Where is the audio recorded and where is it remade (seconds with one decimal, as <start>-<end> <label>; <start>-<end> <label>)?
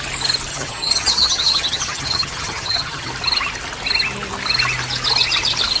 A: 0.0-0.5 recorded; 0.5-3.1 remade; 3.1-5.8 recorded